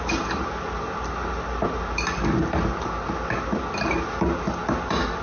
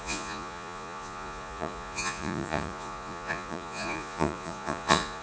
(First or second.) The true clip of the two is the first